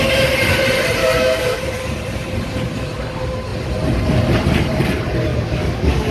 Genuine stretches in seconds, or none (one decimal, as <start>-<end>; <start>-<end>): 0.0-1.0; 1.6-5.3